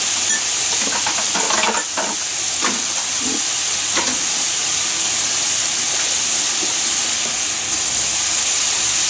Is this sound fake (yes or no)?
no